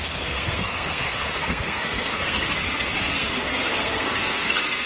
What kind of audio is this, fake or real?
fake